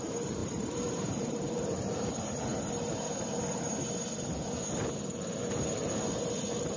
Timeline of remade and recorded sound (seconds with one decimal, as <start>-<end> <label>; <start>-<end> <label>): 0.0-2.5 remade; 2.5-6.8 recorded